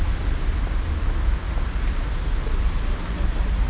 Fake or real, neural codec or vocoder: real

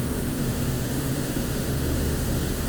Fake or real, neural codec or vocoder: fake, autoencoder, DAC-VAE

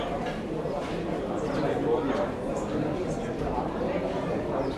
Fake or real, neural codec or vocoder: fake, vocoder, BigVGAN v2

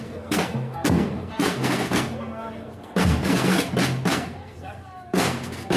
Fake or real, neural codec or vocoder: fake, codec, SNAC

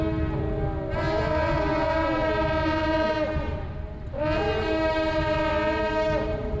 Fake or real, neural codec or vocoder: real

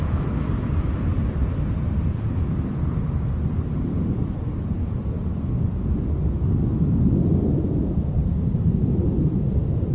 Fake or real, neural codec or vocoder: real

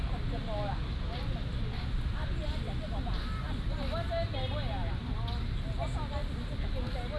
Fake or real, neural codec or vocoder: real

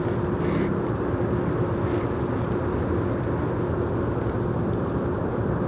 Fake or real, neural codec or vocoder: real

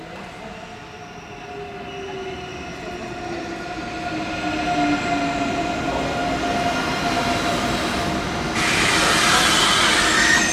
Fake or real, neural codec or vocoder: real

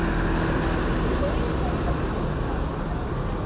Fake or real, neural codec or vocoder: real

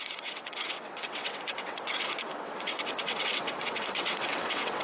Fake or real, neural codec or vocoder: fake, vocoder, WaveNeXt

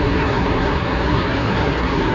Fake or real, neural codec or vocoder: fake, codec, SNAC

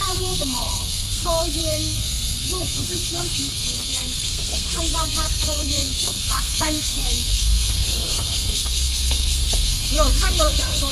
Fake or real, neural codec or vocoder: fake, codec, SNAC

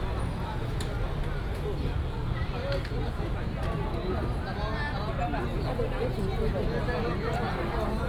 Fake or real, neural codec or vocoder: real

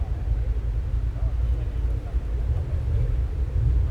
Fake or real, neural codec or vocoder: real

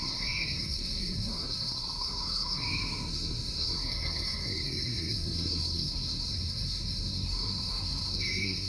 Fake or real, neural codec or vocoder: fake, codec, SNAC